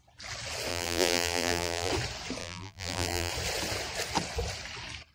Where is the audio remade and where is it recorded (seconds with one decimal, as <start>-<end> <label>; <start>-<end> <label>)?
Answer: 0.0-0.7 recorded; 0.7-1.9 remade; 1.9-2.4 recorded; 2.4-3.3 remade; 3.3-5.1 recorded